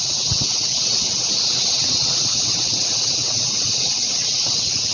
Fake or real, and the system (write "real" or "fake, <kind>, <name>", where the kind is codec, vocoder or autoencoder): fake, vocoder, WaveNeXt